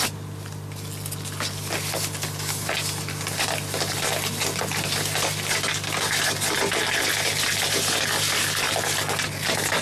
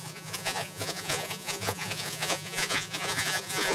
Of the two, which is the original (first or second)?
first